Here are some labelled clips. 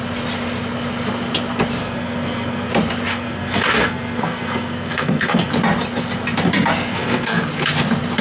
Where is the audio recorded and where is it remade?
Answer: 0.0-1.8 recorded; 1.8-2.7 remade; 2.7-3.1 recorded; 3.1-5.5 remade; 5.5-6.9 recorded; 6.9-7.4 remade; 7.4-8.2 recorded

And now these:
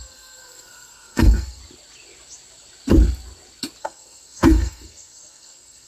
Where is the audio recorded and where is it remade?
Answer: 0.0-1.6 remade; 1.6-3.8 recorded; 3.8-5.9 remade